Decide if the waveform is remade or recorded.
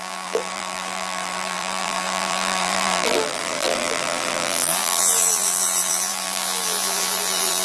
remade